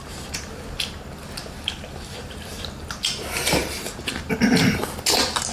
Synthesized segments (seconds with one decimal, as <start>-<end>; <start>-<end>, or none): 1.4-2.5; 3.6-4.3